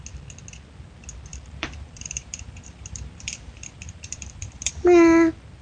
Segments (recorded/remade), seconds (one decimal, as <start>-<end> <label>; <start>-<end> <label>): 0.0-1.3 recorded; 1.3-4.7 remade; 4.7-5.6 recorded